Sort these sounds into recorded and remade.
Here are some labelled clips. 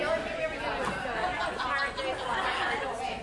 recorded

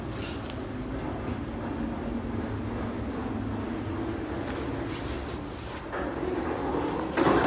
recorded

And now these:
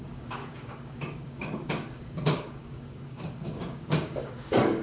remade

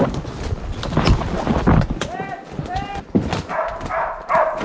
recorded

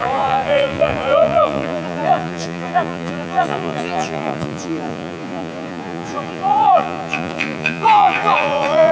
remade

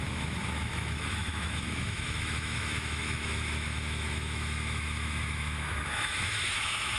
remade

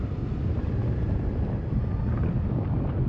recorded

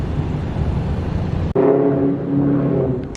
recorded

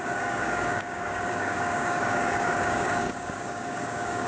remade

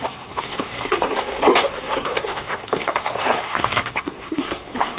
remade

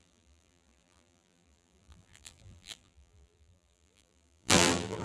remade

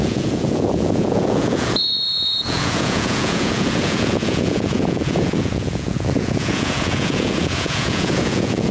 remade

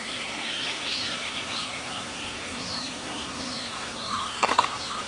remade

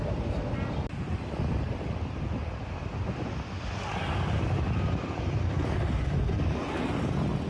recorded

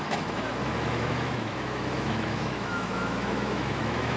remade